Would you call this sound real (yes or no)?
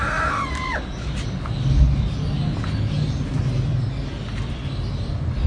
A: yes